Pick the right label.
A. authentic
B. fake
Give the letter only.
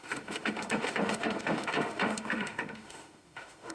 B